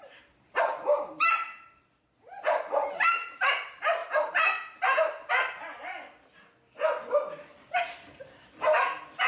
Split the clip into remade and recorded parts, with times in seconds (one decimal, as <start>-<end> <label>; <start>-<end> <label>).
0.0-9.3 recorded